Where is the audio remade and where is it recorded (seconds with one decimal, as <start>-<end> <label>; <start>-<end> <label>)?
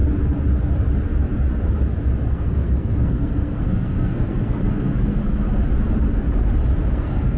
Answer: 0.0-2.3 recorded; 2.3-5.2 remade; 5.2-6.9 recorded; 6.9-7.4 remade